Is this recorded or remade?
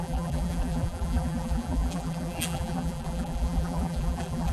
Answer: remade